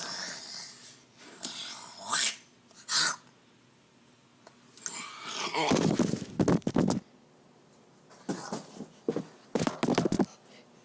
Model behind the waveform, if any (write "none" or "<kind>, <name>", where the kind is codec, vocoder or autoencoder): none